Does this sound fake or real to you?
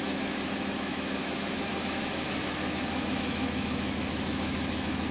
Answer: fake